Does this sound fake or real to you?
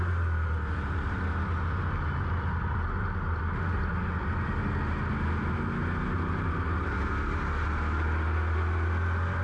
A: real